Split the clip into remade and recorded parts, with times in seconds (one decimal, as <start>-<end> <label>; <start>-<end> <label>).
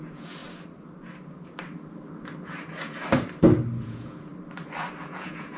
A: 0.0-0.4 remade; 0.4-3.8 recorded; 3.8-4.3 remade; 4.3-5.0 recorded; 5.0-5.6 remade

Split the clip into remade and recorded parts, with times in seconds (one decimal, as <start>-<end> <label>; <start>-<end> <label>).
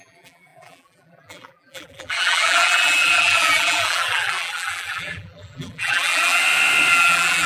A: 0.0-6.4 remade; 6.4-6.9 recorded; 6.9-7.5 remade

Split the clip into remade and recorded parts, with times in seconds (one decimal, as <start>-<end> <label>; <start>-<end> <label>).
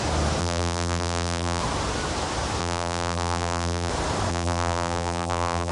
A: 0.0-0.4 recorded; 0.4-1.6 remade; 1.6-2.6 recorded; 2.6-3.9 remade; 3.9-4.3 recorded; 4.3-5.7 remade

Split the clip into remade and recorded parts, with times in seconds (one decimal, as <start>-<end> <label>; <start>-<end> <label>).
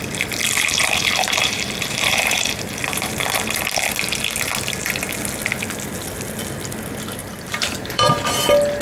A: 0.0-0.8 recorded; 0.8-2.7 remade; 2.7-7.2 recorded; 7.2-8.1 remade; 8.1-8.8 recorded